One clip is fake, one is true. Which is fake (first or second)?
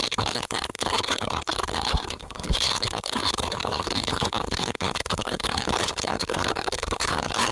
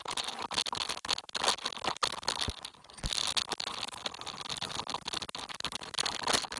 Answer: first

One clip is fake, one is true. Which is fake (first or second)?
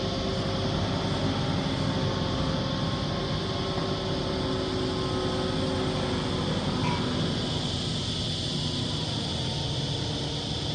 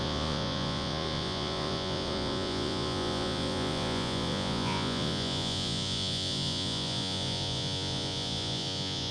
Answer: second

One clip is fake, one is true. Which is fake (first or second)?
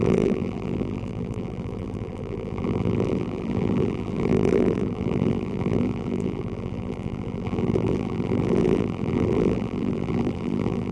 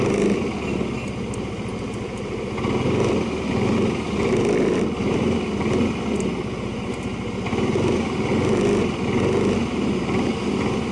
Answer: first